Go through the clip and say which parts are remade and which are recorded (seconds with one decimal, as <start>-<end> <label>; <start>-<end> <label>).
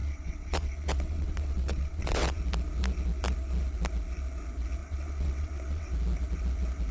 0.0-2.4 remade; 2.4-4.8 recorded; 4.8-5.9 remade; 5.9-6.9 recorded